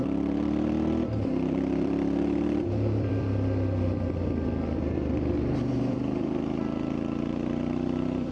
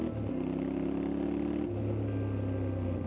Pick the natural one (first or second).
second